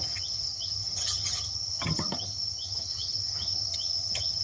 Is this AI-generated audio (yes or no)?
yes